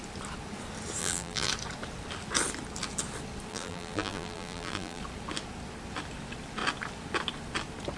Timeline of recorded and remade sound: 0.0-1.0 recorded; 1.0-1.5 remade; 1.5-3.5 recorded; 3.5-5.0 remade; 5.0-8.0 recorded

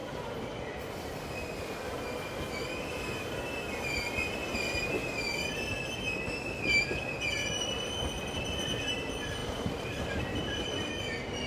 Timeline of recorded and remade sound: 0.0-2.4 remade; 2.4-9.4 recorded; 9.4-10.2 remade; 10.2-11.5 recorded